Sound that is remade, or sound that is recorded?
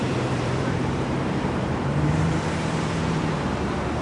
remade